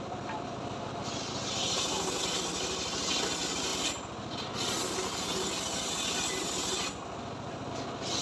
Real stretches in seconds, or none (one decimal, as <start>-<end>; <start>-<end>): 0.0-8.2